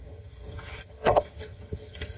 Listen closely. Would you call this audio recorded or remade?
remade